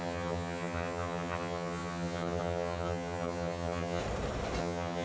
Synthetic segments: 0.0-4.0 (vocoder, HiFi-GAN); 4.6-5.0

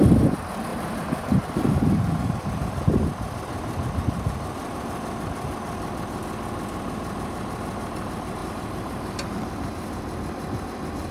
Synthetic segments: 0.7-2.5 (vocoder, BigVGAN v2); 8.4-9.3

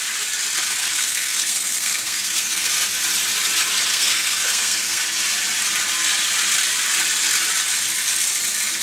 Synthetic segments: 0.8-2.7 (codec, SNAC); 3.9-5.0